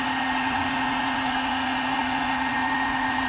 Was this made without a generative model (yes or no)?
no